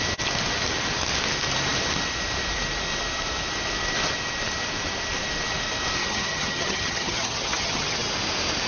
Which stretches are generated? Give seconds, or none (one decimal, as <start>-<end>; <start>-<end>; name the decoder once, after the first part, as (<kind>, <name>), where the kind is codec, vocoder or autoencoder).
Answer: 6.0-8.1 (vocoder, HiFi-GAN)